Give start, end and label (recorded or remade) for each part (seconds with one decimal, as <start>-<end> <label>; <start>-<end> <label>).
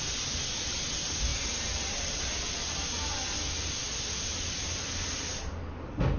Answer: 0.0-1.3 recorded; 1.3-2.4 remade; 2.4-4.3 recorded; 4.3-5.4 remade; 5.4-6.2 recorded